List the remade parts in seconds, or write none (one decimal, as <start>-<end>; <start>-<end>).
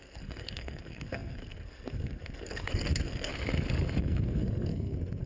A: 0.0-3.3; 4.0-5.3